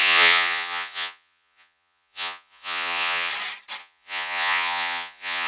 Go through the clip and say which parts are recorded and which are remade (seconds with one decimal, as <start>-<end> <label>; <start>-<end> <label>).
0.0-3.3 remade; 3.3-3.8 recorded; 3.8-5.5 remade